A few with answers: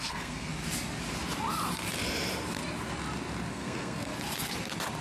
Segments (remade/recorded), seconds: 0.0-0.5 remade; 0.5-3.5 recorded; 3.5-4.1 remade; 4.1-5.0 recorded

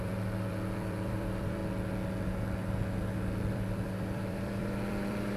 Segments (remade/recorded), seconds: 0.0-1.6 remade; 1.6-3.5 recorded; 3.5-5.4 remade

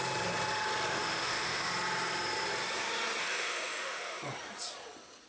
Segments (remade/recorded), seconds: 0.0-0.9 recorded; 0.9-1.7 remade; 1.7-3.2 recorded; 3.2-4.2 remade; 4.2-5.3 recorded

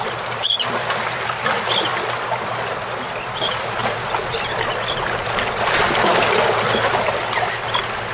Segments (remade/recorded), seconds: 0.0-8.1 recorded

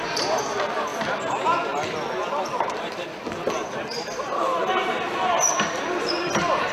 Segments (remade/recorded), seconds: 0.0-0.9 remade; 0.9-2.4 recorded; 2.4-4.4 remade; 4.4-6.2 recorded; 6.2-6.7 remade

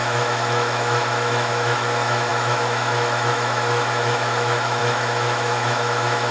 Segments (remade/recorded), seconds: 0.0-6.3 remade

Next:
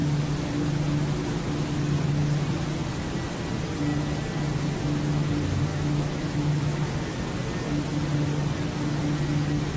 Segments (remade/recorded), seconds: 0.0-5.7 recorded; 5.7-7.2 remade; 7.2-9.8 recorded

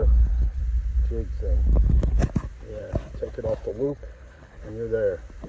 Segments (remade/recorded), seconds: 0.0-0.6 remade; 0.6-1.7 recorded; 1.7-2.2 remade; 2.2-3.7 recorded; 3.7-4.6 remade; 4.6-5.5 recorded